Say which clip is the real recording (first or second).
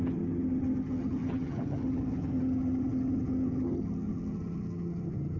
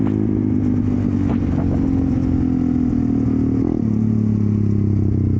second